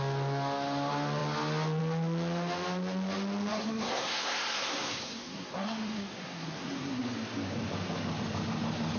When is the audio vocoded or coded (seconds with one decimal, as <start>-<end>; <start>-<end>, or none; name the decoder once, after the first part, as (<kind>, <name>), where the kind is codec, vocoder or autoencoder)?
3.5-7.0 (codec, SNAC)